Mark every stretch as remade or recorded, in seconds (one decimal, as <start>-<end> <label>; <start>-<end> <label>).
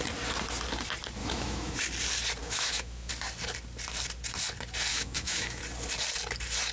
0.0-1.2 recorded; 1.2-1.8 remade; 1.8-2.4 recorded; 2.4-3.1 remade; 3.1-4.9 recorded; 4.9-5.6 remade; 5.6-6.7 recorded